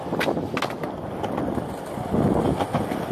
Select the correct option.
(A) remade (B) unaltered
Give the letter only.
B